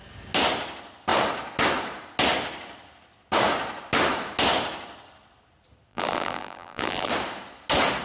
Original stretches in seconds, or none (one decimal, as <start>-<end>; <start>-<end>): 0.0-5.9; 7.1-8.0